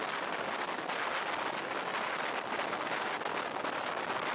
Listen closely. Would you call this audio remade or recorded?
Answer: recorded